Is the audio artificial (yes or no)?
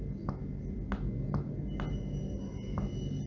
no